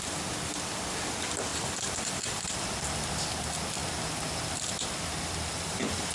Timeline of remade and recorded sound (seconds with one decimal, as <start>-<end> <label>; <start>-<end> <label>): 0.0-1.5 recorded; 1.5-3.3 remade; 3.3-3.8 recorded; 3.8-6.1 remade